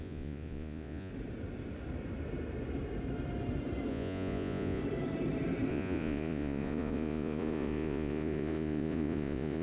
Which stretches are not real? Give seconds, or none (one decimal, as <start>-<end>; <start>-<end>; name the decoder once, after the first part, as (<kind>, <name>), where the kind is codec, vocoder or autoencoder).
0.0-1.1 (vocoder, Vocos); 3.9-4.8; 5.7-9.6